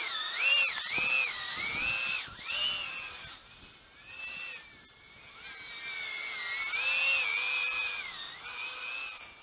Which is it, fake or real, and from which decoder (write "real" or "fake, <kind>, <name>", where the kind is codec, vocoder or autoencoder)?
real